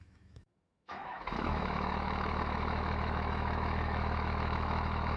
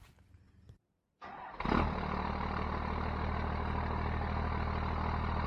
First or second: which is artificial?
first